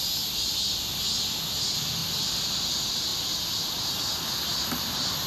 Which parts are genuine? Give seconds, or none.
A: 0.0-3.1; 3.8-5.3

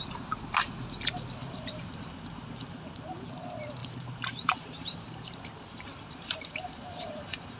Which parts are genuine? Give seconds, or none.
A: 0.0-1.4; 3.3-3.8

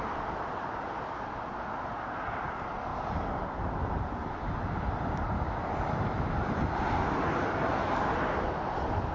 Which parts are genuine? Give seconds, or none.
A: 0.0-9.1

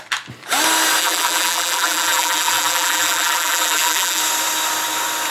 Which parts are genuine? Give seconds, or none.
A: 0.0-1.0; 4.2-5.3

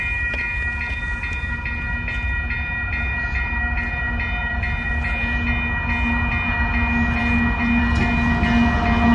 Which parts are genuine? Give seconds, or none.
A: 0.0-4.4; 4.9-9.1

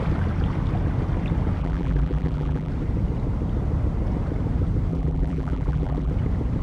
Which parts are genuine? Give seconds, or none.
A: 0.0-1.6; 2.7-4.9; 6.1-6.6

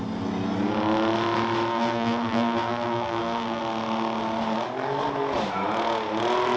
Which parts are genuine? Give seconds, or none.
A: 0.0-1.7; 3.6-6.6

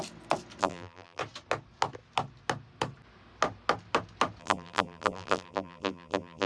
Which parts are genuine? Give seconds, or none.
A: 0.0-0.6; 1.2-4.4